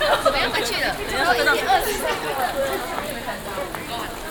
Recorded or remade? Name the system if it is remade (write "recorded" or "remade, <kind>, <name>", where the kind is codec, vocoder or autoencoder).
recorded